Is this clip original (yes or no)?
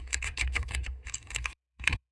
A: no